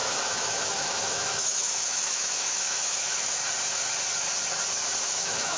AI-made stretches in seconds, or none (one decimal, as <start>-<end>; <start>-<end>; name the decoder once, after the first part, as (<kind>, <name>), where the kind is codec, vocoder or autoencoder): 0.0-3.4 (autoencoder, DAC-VAE); 5.0-5.6